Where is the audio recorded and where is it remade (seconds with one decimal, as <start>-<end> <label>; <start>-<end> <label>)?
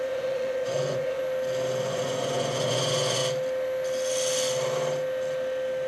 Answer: 0.0-1.2 remade; 1.2-1.8 recorded; 1.8-3.2 remade; 3.2-5.9 recorded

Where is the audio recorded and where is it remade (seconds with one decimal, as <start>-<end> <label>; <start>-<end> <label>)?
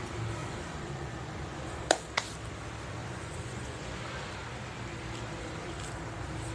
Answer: 0.0-0.4 recorded; 0.4-1.8 remade; 1.8-3.0 recorded; 3.0-4.0 remade; 4.0-6.5 recorded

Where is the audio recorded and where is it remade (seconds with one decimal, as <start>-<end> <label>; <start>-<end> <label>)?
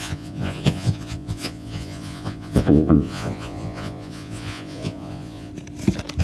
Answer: 0.0-5.5 remade; 5.5-6.2 recorded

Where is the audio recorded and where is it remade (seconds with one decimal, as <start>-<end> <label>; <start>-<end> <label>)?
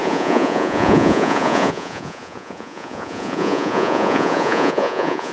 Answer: 0.0-5.3 remade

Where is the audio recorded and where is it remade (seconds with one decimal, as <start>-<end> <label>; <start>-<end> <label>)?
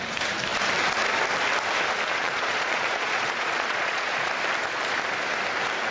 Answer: 0.0-2.2 recorded; 2.2-4.3 remade; 4.3-5.9 recorded